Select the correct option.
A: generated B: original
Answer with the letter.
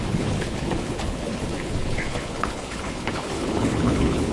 A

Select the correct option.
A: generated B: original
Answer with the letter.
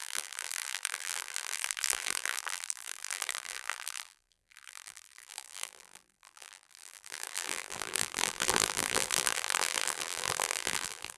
A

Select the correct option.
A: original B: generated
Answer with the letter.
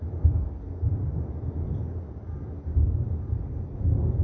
A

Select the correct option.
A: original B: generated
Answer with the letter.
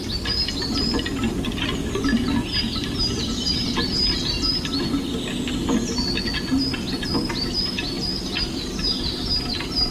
A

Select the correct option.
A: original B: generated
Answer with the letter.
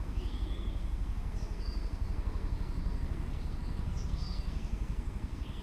B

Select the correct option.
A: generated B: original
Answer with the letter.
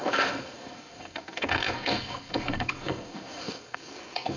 A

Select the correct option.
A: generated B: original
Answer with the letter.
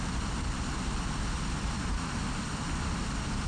B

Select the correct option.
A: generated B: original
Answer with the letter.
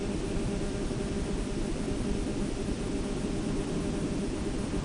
B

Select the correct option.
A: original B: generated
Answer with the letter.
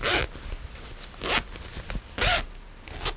A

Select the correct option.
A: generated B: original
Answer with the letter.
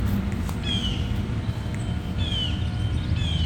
B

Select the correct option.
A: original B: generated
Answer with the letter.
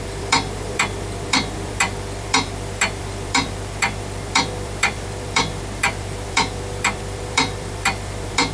B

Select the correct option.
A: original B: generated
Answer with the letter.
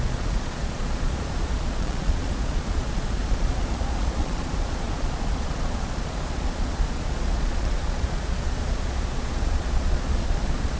B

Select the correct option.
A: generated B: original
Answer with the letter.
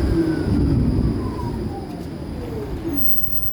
B